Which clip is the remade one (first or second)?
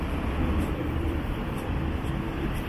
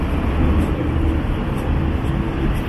first